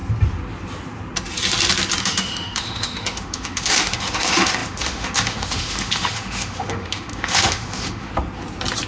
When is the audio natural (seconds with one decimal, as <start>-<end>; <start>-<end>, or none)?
0.0-2.0; 8.1-8.9